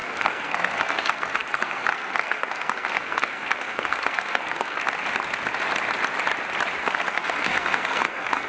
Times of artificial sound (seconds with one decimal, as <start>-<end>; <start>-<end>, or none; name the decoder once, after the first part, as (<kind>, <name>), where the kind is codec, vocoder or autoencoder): 0.0-4.8 (codec, SNAC); 6.8-8.5

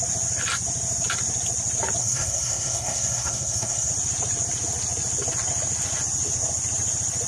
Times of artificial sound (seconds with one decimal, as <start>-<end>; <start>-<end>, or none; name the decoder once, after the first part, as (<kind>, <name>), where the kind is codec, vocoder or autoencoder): 2.0-3.9 (codec, SNAC)

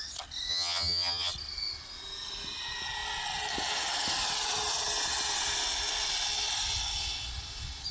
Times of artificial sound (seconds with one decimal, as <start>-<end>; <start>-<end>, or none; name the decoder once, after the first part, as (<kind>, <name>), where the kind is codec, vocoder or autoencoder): 0.5-1.3 (vocoder, HiFi-GAN)

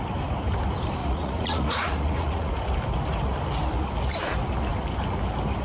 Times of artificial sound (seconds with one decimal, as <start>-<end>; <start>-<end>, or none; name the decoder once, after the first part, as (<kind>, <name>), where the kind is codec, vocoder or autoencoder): 1.0-2.5 (vocoder, Vocos)

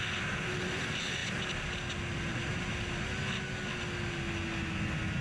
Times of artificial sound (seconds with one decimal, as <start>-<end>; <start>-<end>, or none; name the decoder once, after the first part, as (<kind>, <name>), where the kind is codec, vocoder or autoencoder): none

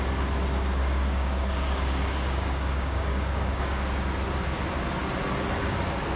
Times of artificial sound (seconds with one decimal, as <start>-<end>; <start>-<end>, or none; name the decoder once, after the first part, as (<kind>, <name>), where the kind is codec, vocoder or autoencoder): 0.8-4.0 (codec, DAC)

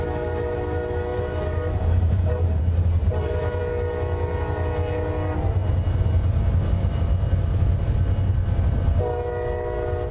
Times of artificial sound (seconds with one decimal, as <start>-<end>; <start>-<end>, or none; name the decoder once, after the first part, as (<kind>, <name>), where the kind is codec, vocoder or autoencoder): 1.1-2.6 (vocoder, BigVGAN v2); 3.0-3.6